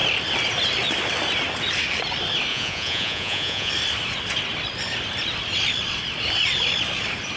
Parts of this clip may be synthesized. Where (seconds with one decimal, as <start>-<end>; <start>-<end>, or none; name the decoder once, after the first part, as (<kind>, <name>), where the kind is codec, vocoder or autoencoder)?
2.5-3.7 (vocoder, Vocos)